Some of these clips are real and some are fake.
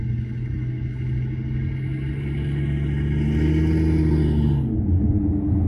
real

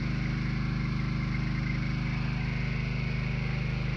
real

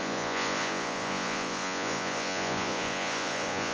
fake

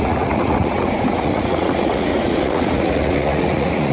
fake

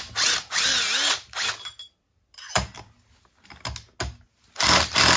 real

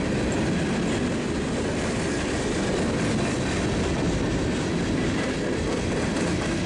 real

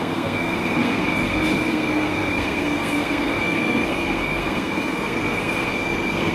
fake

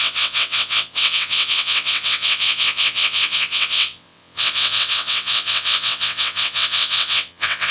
fake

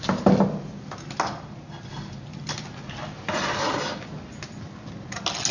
real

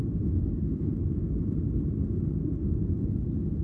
real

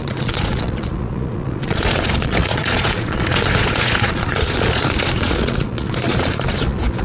fake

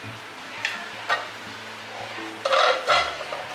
real